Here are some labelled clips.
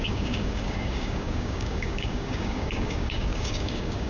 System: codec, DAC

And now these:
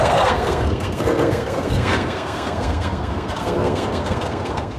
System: codec, SNAC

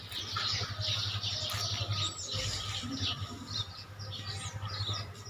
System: none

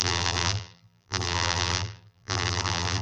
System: vocoder, BigVGAN v2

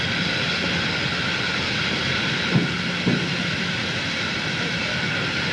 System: none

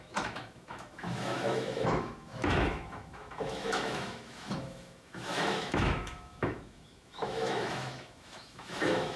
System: autoencoder, DAC-VAE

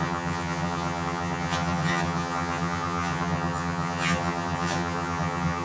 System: vocoder, HiFi-GAN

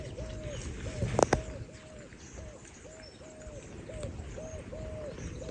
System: none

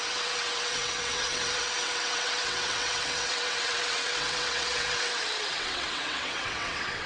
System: vocoder, WaveNeXt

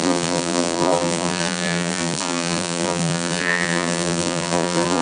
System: vocoder, BigVGAN v2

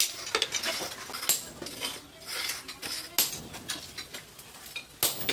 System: none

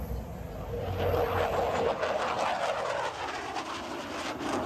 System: none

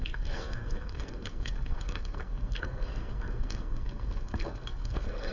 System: codec, SNAC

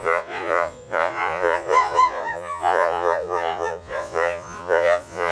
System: vocoder, Vocos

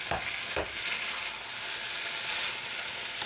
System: none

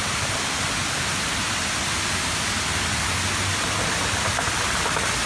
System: none